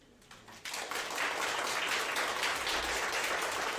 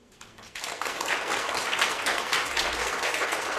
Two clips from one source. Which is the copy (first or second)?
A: second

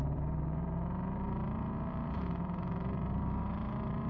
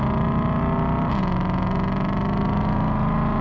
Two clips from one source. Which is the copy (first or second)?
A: first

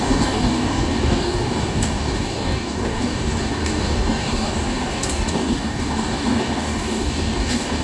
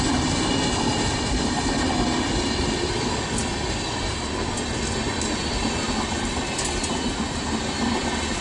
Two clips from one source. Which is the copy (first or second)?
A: first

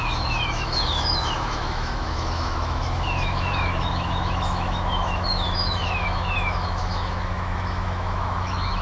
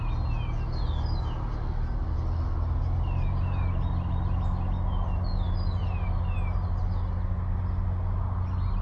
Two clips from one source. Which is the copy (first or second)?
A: first